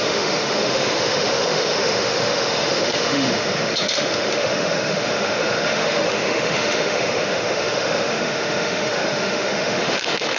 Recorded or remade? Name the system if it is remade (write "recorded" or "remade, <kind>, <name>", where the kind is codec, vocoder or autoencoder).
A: remade, autoencoder, DAC-VAE